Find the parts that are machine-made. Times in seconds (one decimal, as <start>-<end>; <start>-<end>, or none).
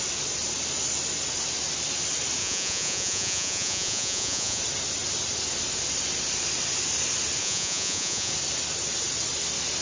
2.4-4.6; 7.4-8.3